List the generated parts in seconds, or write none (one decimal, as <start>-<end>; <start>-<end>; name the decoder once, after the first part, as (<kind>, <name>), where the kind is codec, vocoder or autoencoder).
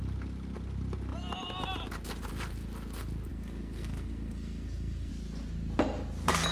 3.3-5.1 (codec, SNAC)